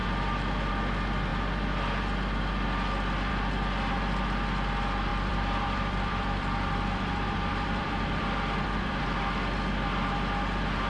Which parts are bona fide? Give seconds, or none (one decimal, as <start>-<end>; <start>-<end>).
0.0-5.1; 9.0-10.9